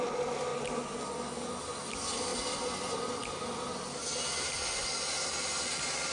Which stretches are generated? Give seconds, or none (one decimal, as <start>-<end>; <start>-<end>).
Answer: 0.0-0.5; 1.6-2.3; 4.2-6.1